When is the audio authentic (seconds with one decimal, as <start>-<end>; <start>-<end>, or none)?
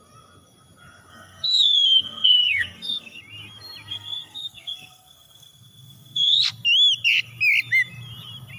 0.0-1.1; 3.2-3.9; 6.4-8.6